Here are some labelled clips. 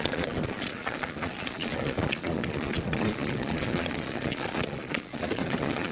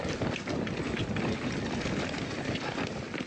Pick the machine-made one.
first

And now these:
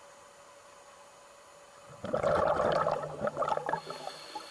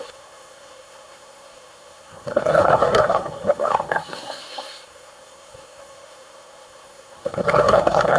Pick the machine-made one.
second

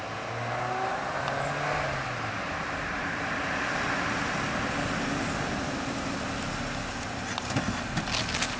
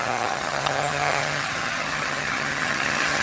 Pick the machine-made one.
second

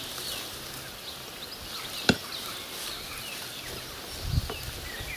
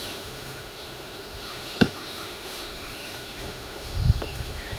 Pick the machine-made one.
second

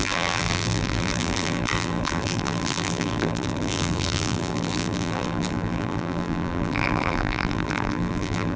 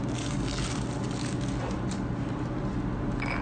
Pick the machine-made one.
first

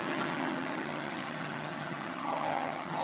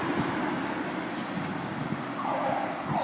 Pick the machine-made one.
first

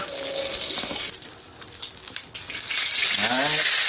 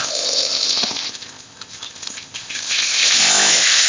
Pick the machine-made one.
second